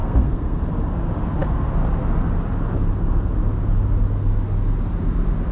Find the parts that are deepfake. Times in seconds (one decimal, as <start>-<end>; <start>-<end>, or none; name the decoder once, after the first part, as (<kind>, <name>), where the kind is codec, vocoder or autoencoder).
0.0-0.6 (codec, SNAC)